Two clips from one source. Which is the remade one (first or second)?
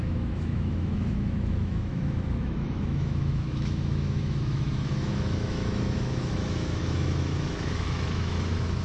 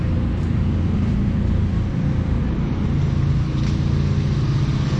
first